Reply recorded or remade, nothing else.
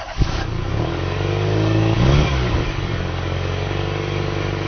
remade